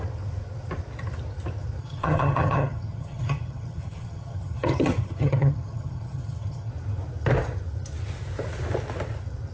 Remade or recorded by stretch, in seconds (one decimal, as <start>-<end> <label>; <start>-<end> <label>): 0.0-1.8 recorded; 1.8-6.7 remade; 6.7-9.5 recorded